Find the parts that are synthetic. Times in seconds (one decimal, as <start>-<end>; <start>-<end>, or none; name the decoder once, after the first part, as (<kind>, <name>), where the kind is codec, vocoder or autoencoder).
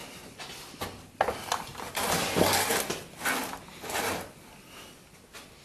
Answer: none